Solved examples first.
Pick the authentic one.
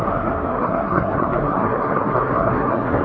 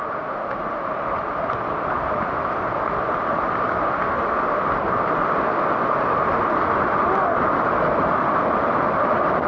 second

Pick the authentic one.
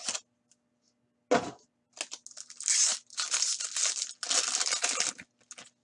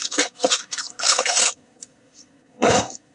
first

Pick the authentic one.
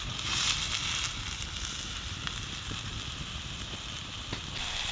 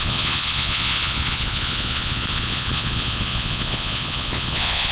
first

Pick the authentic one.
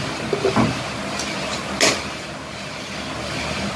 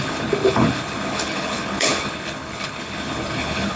first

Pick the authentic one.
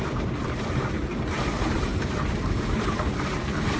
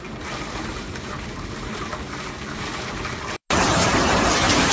second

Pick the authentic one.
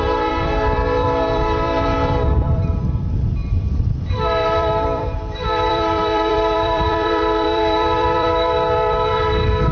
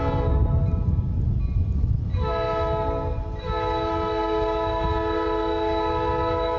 second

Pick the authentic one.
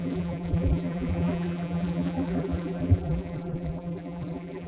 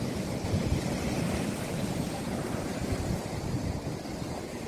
second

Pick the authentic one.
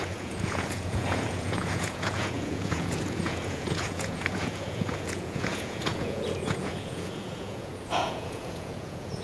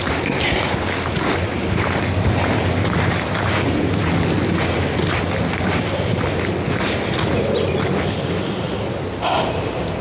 second